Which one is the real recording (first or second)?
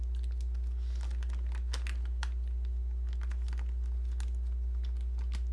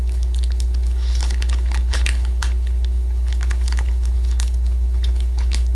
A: first